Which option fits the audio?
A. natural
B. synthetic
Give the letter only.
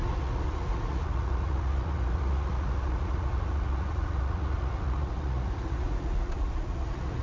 B